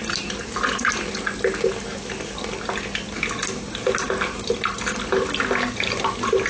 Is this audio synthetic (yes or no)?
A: no